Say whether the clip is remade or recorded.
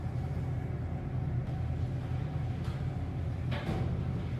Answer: recorded